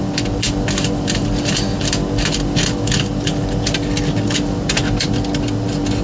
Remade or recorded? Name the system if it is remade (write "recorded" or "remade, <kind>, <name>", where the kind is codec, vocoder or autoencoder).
remade, vocoder, BigVGAN v2